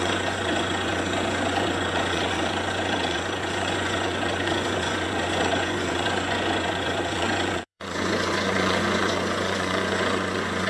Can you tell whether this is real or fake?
fake